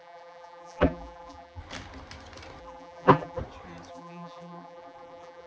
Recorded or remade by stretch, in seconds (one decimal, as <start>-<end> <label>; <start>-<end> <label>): 0.0-1.6 remade; 1.6-2.6 recorded; 2.6-3.4 remade; 3.4-3.9 recorded; 3.9-5.5 remade